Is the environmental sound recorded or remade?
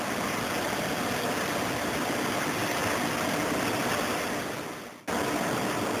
recorded